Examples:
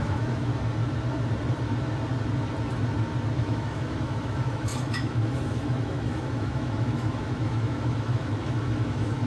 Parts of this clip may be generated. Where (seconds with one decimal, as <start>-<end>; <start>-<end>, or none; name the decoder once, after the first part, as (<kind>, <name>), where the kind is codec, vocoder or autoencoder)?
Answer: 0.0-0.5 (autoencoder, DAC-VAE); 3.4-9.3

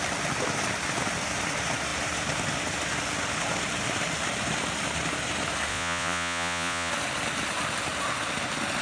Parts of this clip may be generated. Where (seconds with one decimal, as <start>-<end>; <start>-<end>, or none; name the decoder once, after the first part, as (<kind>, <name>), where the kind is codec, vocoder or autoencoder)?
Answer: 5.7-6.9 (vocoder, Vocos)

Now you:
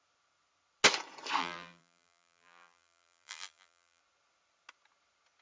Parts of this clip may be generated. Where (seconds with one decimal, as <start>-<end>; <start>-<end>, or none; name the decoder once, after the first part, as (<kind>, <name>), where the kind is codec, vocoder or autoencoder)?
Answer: 1.4-4.0 (vocoder, BigVGAN v2)

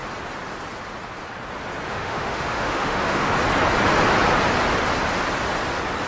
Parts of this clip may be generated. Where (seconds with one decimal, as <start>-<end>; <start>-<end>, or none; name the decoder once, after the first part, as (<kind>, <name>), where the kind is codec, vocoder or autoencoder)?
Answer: 1.9-3.3 (autoencoder, DAC-VAE)